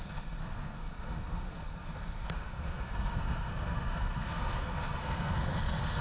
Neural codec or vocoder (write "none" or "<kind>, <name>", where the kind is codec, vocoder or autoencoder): codec, SNAC